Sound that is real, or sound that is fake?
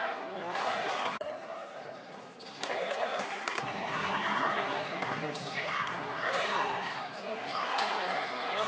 fake